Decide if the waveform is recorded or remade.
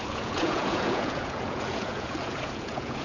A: remade